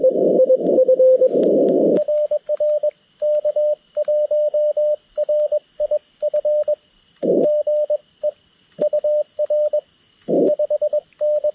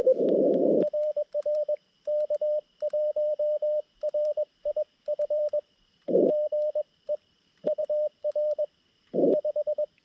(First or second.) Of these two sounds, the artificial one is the second